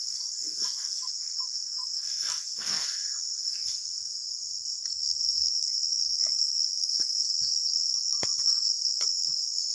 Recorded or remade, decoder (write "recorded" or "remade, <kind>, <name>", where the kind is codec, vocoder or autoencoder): remade, codec, SNAC